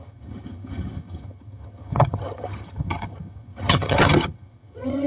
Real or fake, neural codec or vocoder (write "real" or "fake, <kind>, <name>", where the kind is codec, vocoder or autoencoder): fake, vocoder, HiFi-GAN